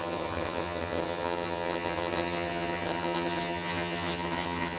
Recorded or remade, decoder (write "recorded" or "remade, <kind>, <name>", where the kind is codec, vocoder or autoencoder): remade, vocoder, HiFi-GAN